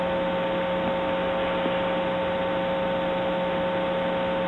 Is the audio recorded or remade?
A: recorded